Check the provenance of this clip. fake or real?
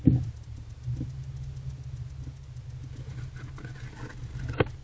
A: real